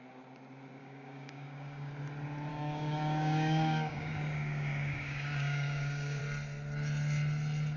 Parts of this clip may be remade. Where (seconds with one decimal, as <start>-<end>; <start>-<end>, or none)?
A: 0.8-1.9; 2.5-6.2